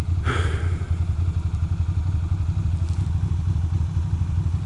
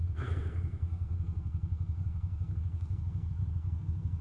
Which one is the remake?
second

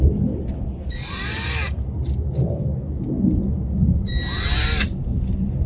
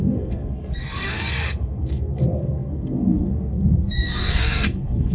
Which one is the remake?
second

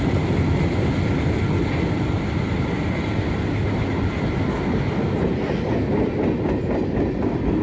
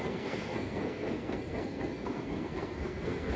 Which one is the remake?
second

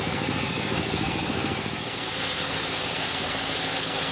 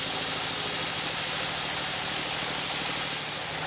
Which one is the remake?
first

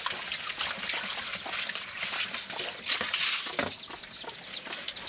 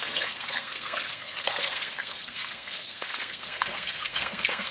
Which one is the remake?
second